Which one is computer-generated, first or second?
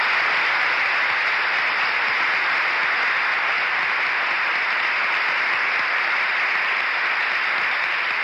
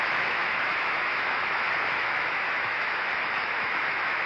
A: second